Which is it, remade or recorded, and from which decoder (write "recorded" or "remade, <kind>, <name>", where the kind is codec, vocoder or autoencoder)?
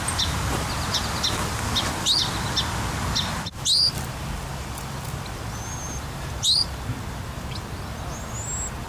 recorded